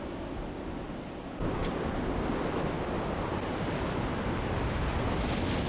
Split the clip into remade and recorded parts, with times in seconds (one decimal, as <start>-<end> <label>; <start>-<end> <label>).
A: 0.0-5.7 recorded